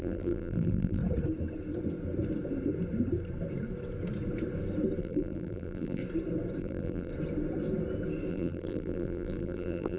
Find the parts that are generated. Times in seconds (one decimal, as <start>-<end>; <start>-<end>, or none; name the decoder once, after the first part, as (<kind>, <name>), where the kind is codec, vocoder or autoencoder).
0.0-1.0 (vocoder, BigVGAN v2); 5.0-6.0; 6.6-7.1; 8.3-10.0